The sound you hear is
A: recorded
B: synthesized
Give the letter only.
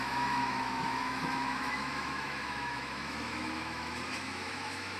B